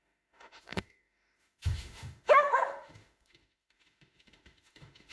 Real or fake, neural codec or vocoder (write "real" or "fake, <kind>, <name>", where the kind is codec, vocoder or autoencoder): fake, autoencoder, DAC-VAE